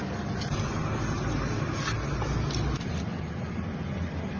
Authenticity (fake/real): real